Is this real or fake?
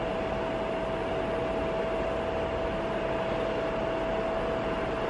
real